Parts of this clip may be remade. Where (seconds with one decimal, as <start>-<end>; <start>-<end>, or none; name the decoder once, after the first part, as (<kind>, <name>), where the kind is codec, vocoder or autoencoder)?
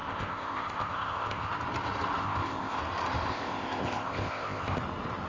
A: 0.0-1.5 (codec, ZipCodec); 2.2-2.8; 3.3-4.8